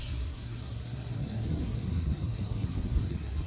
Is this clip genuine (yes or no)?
no